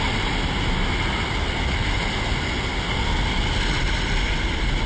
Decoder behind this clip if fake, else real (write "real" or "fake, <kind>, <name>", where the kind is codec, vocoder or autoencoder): real